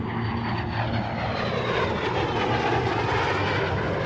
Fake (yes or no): no